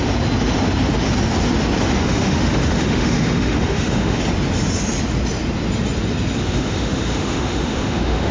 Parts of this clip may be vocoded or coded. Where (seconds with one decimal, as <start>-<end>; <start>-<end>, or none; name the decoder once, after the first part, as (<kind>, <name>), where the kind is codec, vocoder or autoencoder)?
2.0-4.2 (autoencoder, DAC-VAE); 6.4-8.3